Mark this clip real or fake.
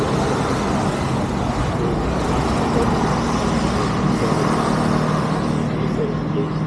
real